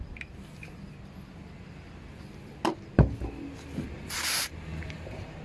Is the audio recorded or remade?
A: recorded